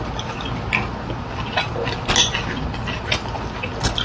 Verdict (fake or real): real